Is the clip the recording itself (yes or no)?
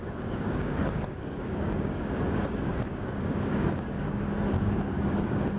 no